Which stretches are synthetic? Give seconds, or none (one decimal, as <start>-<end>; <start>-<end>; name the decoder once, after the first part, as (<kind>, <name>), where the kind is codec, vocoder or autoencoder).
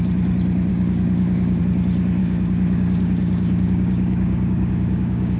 0.7-1.6 (codec, DAC); 2.2-5.4